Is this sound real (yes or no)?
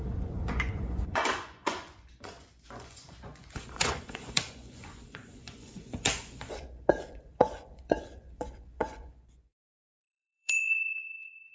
no